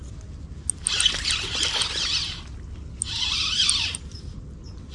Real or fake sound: real